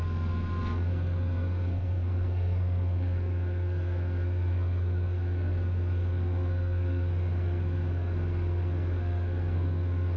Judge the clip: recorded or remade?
remade